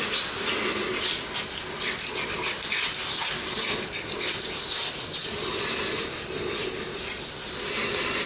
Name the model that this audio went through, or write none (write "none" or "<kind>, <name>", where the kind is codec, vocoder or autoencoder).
none